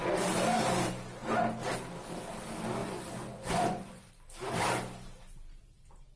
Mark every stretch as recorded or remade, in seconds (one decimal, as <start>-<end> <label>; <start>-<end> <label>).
0.0-2.8 recorded; 2.8-4.1 remade; 4.1-6.2 recorded